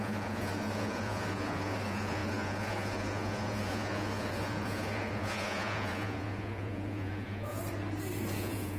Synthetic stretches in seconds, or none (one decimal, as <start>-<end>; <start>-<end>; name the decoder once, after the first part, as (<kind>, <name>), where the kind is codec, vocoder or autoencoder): 0.0-7.6 (vocoder, Vocos); 8.4-8.8